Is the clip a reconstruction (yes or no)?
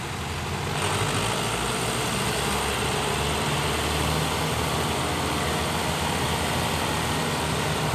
no